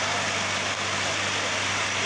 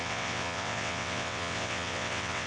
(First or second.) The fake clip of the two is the second